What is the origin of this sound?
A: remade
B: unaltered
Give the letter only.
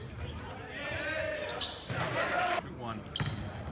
B